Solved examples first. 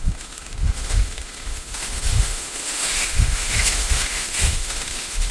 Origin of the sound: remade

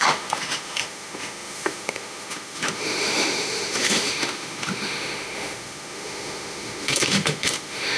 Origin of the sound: remade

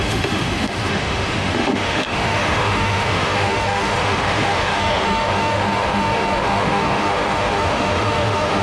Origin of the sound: remade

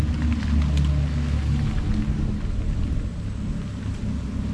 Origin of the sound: recorded